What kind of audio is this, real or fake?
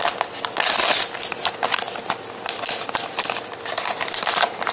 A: real